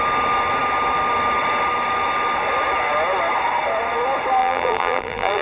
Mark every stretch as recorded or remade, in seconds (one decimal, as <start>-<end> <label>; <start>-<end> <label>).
0.0-4.4 recorded; 4.4-5.4 remade